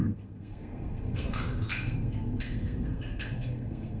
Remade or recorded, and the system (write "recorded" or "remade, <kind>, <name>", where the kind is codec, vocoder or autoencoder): remade, codec, SNAC